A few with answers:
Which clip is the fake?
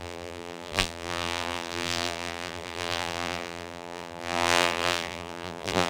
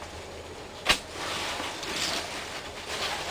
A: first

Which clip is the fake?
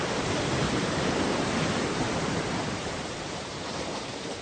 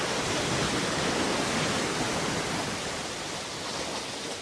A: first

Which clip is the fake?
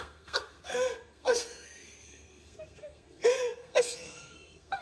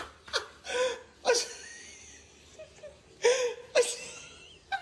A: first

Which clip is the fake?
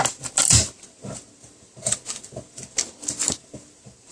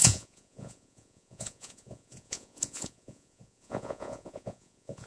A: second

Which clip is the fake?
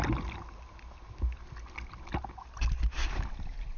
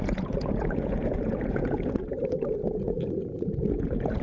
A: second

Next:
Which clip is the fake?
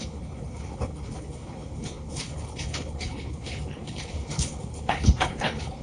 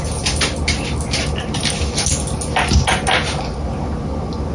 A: first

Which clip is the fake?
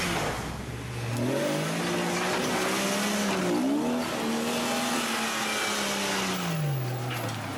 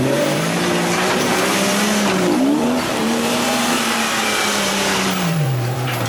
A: second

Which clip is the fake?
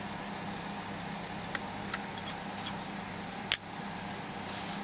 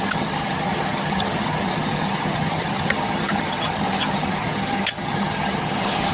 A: second